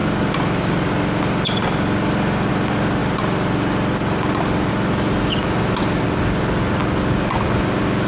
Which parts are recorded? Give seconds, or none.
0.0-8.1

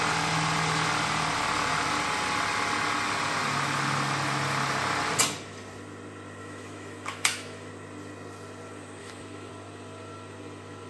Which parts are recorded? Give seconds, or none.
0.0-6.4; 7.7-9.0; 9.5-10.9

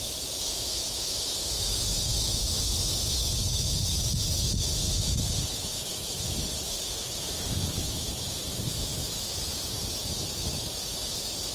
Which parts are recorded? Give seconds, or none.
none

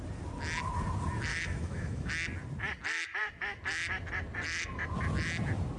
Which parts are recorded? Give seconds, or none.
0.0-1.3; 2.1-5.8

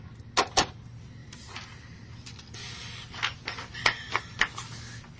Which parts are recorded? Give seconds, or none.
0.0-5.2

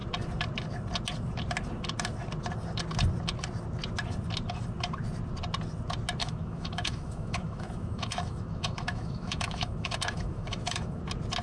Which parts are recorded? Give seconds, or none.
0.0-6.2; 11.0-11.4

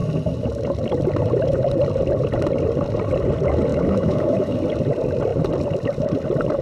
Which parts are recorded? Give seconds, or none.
0.0-3.7; 4.6-6.6

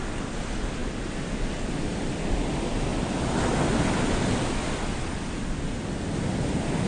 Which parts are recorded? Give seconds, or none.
0.0-6.9